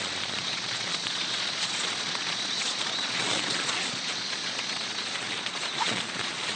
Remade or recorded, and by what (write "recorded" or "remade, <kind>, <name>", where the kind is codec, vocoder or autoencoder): remade, vocoder, Vocos